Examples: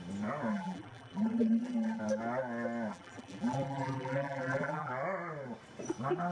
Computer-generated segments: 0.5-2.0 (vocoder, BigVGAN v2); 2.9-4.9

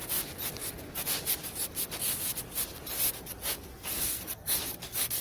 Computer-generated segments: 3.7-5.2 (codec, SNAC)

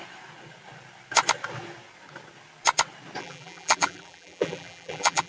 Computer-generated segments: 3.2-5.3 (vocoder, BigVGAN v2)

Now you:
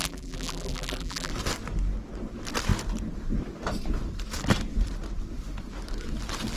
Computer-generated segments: 0.0-1.3 (vocoder, BigVGAN v2)

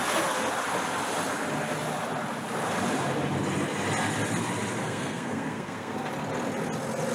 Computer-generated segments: 4.8-6.1 (codec, SNAC)

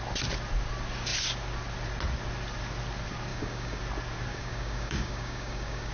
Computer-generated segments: 3.3-3.8 (codec, DAC); 4.3-5.9

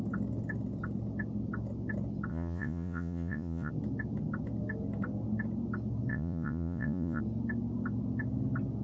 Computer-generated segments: 2.3-3.7 (vocoder, Vocos); 6.1-7.2